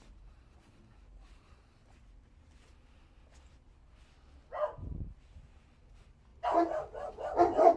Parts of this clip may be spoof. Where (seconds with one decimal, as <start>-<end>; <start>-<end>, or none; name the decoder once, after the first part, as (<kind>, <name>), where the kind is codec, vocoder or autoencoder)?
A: 0.0-1.8 (vocoder, BigVGAN v2); 4.8-6.3; 7.1-7.8

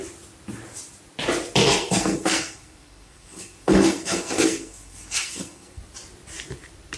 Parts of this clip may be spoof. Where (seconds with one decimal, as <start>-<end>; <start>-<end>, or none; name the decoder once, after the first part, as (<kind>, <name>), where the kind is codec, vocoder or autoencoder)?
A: 1.6-5.8 (codec, SNAC)

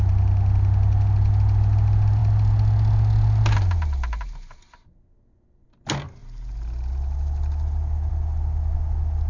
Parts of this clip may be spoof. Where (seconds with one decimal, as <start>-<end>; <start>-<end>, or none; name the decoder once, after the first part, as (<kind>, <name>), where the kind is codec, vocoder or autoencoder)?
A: none

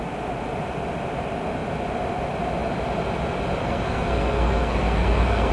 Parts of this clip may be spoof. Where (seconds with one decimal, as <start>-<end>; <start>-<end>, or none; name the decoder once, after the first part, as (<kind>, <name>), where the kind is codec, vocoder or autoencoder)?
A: 3.6-5.5 (codec, SNAC)

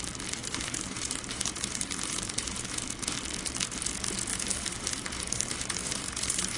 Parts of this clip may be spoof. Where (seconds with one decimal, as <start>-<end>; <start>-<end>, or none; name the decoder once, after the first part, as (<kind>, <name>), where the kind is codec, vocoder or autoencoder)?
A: 0.4-2.8 (vocoder, BigVGAN v2); 4.3-6.6

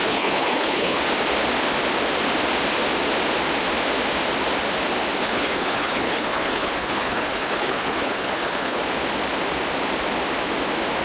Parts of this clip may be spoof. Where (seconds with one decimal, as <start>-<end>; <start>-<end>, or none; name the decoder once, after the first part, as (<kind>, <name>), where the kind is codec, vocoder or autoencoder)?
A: 0.0-1.0 (codec, HILCodec); 5.2-8.8